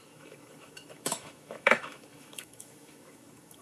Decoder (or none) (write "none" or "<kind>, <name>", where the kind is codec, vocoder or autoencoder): autoencoder, DAC-VAE